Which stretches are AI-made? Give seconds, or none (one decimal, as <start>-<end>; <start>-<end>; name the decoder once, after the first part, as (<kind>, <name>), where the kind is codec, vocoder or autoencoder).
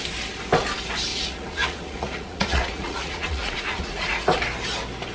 1.1-4.2 (vocoder, Vocos)